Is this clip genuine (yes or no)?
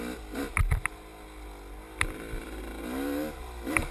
yes